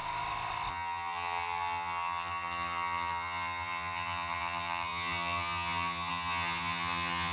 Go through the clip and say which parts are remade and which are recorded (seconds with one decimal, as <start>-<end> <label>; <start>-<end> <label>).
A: 0.0-0.7 recorded; 0.7-7.3 remade